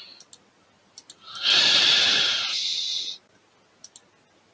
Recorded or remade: recorded